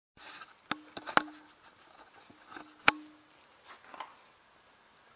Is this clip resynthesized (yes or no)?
no